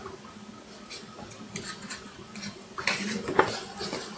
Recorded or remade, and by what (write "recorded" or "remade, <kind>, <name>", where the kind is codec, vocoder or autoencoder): recorded